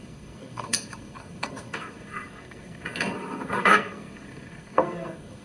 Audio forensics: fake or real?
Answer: fake